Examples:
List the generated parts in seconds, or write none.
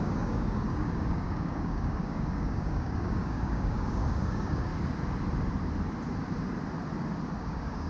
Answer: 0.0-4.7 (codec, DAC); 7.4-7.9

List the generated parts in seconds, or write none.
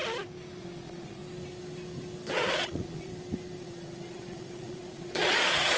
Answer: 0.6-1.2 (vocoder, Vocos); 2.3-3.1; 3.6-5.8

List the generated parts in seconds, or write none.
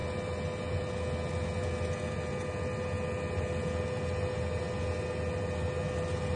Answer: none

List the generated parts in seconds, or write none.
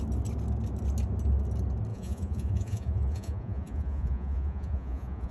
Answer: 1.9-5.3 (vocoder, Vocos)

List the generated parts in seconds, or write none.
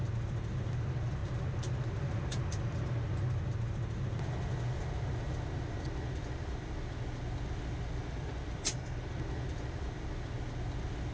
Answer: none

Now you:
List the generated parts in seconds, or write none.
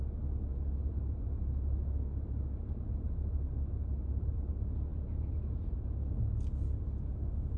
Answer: 4.9-6.3 (vocoder, Vocos)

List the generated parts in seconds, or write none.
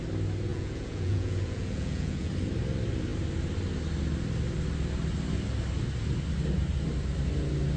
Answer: 0.5-2.3 (vocoder, Vocos)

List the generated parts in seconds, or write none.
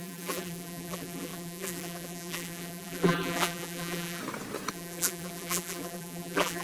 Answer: 0.0-4.2 (vocoder, BigVGAN v2); 4.7-6.6